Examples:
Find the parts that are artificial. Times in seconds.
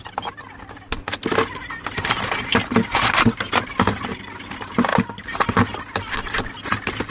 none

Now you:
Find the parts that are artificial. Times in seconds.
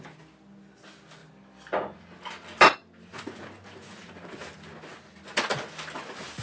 1.2-1.8 (vocoder, BigVGAN v2)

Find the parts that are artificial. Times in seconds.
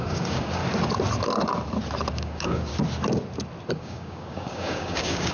0.0-0.6 (codec, DAC); 2.1-2.7; 3.7-5.3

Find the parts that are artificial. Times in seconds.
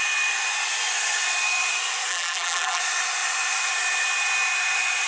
2.1-2.8 (vocoder, BigVGAN v2)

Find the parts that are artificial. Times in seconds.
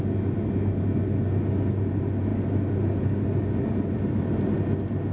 none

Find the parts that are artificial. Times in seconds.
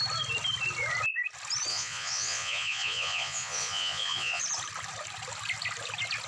1.7-4.4 (vocoder, Vocos)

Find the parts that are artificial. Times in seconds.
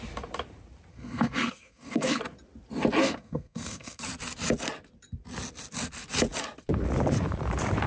0.9-2.2 (codec, SNAC); 3.0-4.0